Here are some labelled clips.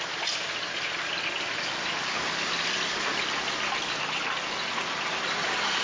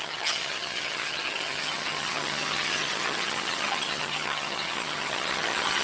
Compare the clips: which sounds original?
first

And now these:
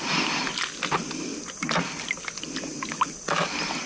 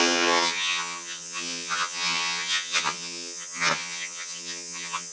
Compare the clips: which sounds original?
first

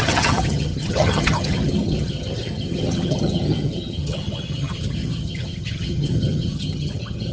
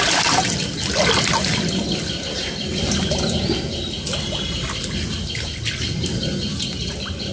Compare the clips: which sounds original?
second